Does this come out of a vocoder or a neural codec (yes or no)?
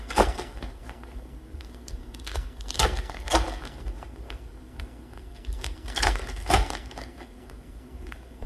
yes